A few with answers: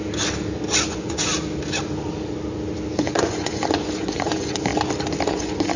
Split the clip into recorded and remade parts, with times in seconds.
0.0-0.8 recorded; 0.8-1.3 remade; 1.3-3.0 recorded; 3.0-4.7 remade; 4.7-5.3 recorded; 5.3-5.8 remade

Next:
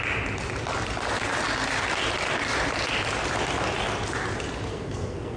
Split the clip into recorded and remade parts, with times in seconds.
0.0-4.7 recorded; 4.7-5.4 remade

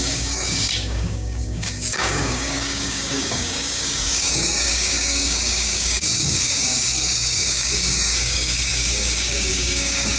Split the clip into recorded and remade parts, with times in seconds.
0.0-10.2 remade

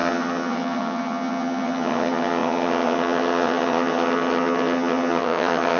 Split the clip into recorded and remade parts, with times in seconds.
0.0-5.8 remade

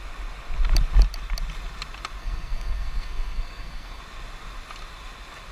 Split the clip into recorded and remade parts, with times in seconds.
0.0-2.2 recorded; 2.2-4.0 remade; 4.0-5.5 recorded

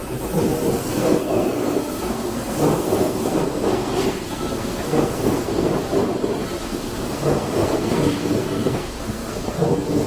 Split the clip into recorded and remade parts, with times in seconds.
0.0-0.7 recorded; 0.7-5.7 remade; 5.7-6.6 recorded; 6.6-10.1 remade

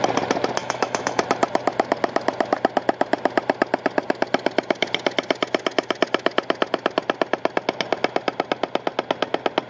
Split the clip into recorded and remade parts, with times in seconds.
0.0-0.6 recorded; 0.6-1.2 remade; 1.2-9.7 recorded